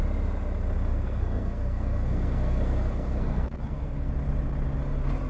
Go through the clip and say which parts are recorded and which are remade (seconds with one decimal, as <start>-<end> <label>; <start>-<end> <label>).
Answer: 0.0-0.9 recorded; 0.9-4.1 remade; 4.1-5.3 recorded